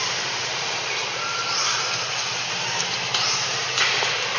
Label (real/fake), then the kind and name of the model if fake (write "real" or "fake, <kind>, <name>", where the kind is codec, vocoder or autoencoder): real